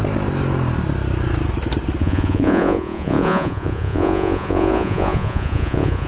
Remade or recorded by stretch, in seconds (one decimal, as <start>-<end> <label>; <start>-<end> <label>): 0.0-2.0 recorded; 2.0-6.1 remade